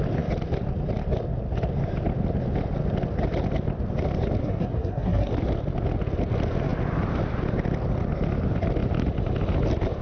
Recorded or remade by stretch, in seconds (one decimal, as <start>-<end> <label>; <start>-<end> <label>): 0.0-4.4 recorded; 4.4-5.3 remade; 5.3-10.0 recorded